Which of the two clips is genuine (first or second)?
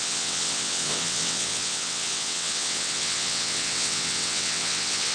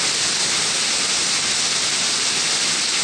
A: second